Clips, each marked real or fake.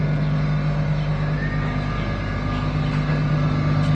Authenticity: real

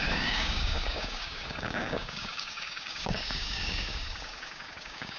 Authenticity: fake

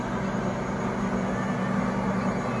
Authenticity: real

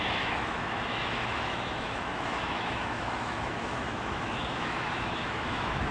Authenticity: fake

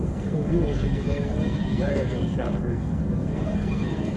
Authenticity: fake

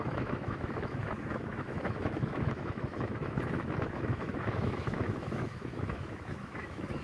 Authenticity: fake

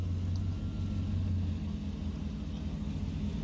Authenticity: real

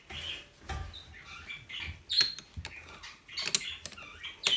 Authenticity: real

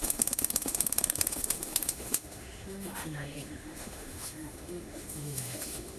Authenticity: fake